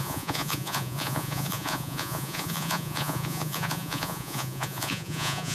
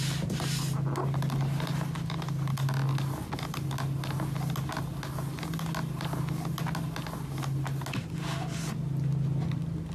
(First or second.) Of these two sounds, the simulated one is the first